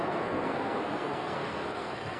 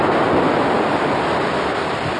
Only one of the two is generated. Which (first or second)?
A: first